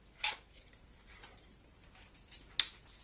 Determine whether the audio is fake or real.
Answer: real